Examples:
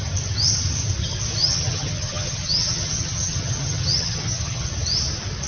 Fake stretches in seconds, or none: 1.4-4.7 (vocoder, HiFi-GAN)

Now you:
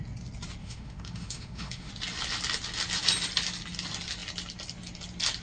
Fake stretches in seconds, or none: 0.6-1.9 (autoencoder, DAC-VAE)

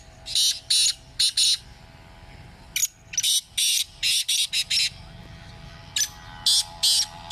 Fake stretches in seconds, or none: none